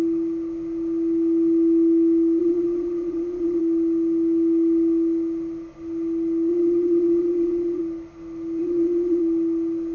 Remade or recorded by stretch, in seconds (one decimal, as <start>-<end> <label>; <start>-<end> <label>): 0.0-2.4 recorded; 2.4-3.6 remade; 3.6-6.5 recorded; 6.5-7.8 remade; 7.8-8.6 recorded; 8.6-9.2 remade; 9.2-9.9 recorded